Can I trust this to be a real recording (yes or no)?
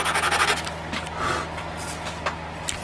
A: yes